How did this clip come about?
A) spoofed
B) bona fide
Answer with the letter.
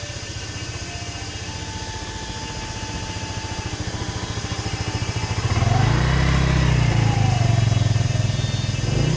B